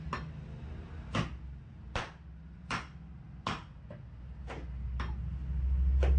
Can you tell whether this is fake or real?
real